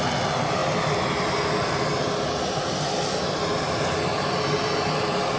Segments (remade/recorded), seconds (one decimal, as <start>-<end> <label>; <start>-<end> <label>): 0.0-5.4 recorded